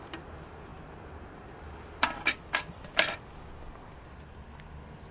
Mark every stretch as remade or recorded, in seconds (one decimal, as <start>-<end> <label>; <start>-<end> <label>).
0.0-0.7 recorded; 0.7-3.8 remade; 3.8-5.1 recorded